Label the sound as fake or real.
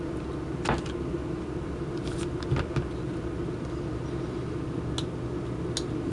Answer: real